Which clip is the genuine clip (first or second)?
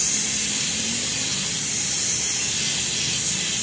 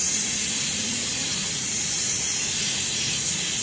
first